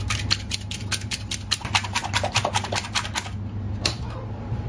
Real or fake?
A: real